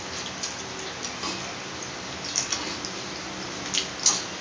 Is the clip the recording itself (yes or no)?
yes